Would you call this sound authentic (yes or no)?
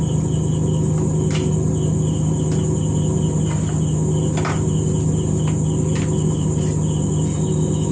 yes